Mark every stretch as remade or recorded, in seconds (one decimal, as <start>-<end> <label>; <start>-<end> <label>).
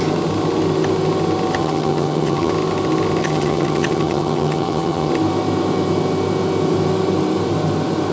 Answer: 0.0-1.6 recorded; 1.6-2.5 remade; 2.5-3.2 recorded; 3.2-5.1 remade; 5.1-8.1 recorded